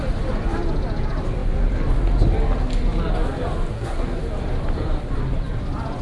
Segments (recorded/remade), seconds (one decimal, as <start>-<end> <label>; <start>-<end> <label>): 0.0-3.7 recorded; 3.7-4.2 remade; 4.2-6.0 recorded